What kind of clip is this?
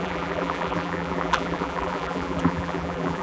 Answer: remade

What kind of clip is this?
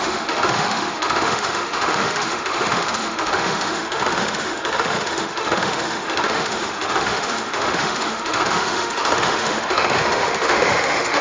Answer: remade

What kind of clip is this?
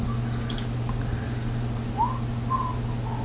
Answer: recorded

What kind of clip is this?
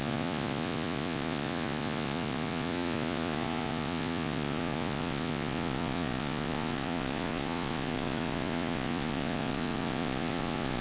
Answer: remade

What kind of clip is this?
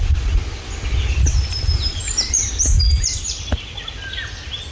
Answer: remade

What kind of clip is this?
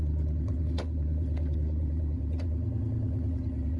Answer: remade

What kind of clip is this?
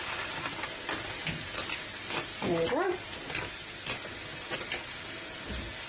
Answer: recorded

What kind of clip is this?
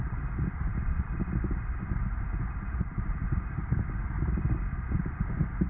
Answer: recorded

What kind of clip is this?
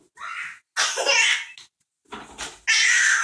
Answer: recorded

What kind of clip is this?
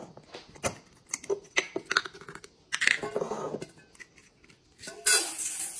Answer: recorded